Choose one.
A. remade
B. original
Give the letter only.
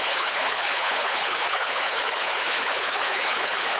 A